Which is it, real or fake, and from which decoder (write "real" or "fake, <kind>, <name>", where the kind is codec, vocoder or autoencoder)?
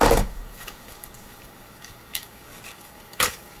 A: fake, codec, DAC